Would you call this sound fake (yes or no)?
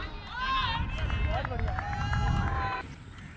no